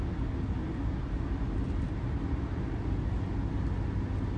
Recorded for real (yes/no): yes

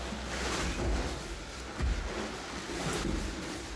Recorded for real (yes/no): yes